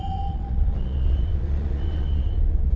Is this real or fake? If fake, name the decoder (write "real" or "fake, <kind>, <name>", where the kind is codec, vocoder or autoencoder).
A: fake, vocoder, Vocos